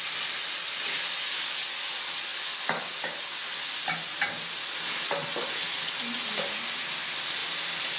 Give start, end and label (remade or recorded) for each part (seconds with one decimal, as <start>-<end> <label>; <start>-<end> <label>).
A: 0.0-8.0 recorded